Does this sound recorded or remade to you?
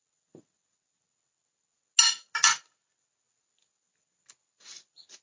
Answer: recorded